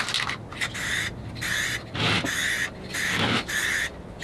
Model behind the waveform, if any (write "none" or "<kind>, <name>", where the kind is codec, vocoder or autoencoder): none